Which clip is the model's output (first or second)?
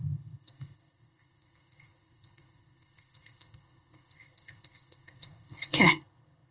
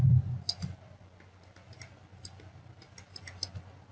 first